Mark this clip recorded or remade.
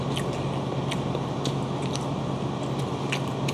recorded